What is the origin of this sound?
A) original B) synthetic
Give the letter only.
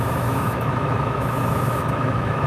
B